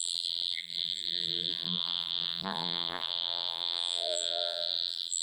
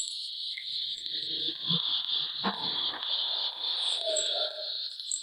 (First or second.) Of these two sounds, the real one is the second